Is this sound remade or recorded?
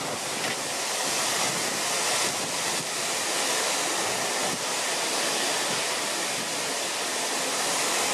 recorded